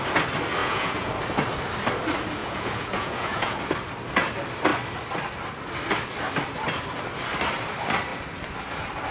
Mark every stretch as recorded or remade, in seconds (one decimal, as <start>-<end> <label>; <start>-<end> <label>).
0.0-0.6 recorded; 0.6-1.1 remade; 1.1-2.4 recorded; 2.4-3.6 remade; 3.6-9.1 recorded